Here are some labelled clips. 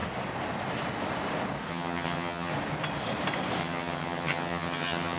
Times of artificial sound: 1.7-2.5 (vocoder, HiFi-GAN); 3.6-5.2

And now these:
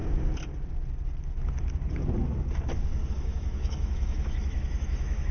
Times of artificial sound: 3.1-5.3 (autoencoder, DAC-VAE)